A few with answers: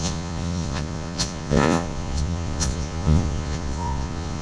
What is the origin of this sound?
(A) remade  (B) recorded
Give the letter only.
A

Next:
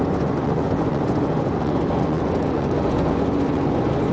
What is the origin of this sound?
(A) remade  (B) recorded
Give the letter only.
A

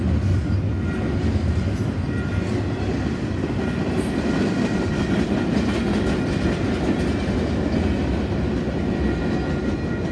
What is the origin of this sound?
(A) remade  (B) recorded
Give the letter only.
B